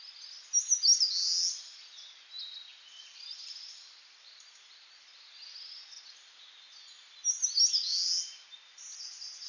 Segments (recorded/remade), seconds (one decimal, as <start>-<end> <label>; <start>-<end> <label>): 0.0-2.7 recorded; 2.7-5.1 remade; 5.1-9.5 recorded